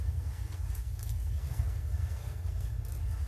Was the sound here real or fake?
fake